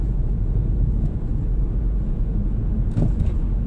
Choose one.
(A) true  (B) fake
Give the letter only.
B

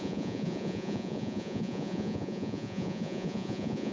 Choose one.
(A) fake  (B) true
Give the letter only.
A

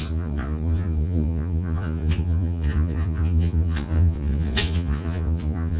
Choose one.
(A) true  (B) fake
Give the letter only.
B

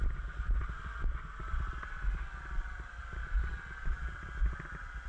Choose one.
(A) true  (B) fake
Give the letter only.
A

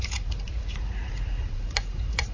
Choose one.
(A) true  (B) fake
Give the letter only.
B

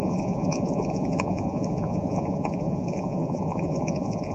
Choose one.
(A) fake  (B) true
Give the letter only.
A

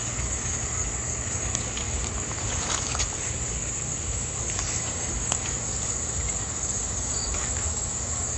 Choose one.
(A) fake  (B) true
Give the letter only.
A